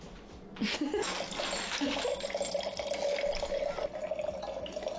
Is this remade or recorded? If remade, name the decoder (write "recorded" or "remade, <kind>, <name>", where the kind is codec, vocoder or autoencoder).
recorded